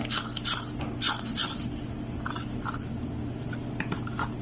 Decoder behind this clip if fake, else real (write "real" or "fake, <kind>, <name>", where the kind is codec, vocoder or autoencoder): real